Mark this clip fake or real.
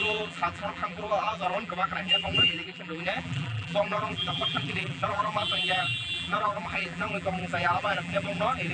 fake